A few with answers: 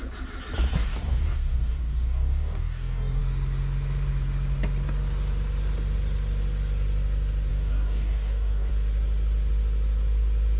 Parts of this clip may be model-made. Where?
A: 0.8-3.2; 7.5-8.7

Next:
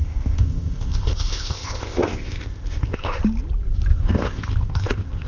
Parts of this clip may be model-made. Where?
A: 0.0-3.2; 3.9-5.3